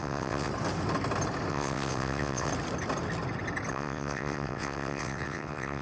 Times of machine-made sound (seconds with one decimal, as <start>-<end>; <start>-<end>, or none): 0.0-0.5; 1.5-2.5; 3.7-5.8